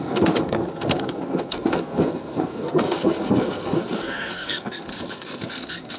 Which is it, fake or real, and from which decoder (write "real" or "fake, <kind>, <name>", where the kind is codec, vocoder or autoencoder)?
fake, codec, SNAC